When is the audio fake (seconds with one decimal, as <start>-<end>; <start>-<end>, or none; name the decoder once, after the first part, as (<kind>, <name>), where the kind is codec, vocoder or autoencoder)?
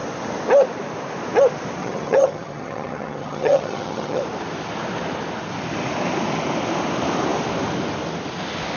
1.8-4.2 (vocoder, HiFi-GAN)